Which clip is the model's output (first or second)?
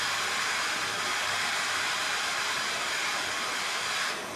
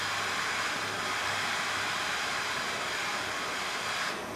first